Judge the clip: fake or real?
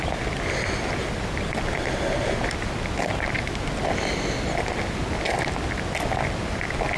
real